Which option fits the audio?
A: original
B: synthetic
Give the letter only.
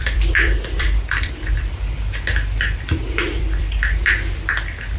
B